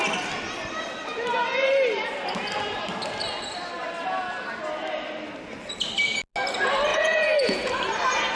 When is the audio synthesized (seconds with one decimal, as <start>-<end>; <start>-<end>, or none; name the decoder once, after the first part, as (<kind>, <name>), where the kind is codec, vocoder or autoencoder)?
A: 6.9-7.7 (vocoder, Vocos)